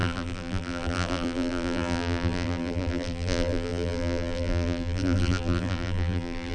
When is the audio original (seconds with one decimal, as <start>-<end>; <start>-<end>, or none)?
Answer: none